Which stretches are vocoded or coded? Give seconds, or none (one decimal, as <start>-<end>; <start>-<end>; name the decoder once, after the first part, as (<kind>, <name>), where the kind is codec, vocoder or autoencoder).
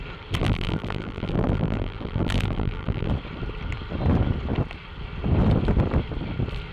0.4-3.1 (vocoder, BigVGAN v2)